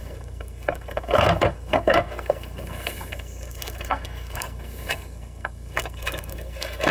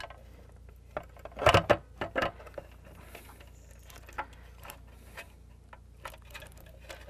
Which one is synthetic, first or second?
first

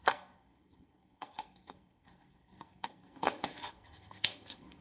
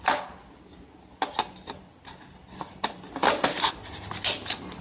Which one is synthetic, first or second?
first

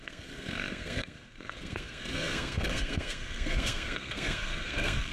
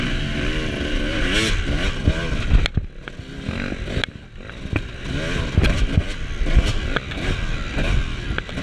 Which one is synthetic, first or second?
first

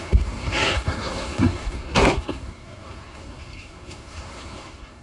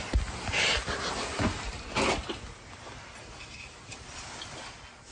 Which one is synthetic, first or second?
first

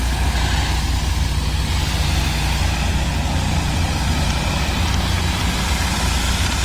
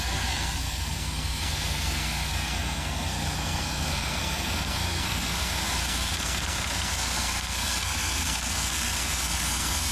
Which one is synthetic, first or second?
second